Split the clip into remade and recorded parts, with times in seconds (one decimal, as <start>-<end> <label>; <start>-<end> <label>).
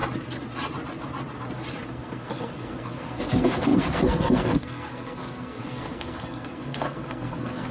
0.0-1.9 recorded; 1.9-7.7 remade